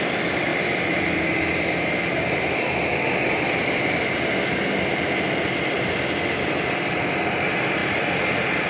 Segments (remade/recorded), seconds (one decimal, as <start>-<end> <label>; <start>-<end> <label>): 0.0-8.7 recorded